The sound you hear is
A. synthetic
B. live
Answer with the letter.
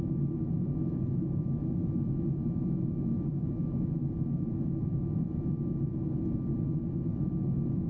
B